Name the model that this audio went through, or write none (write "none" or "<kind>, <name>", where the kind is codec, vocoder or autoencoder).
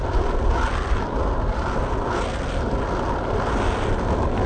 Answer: none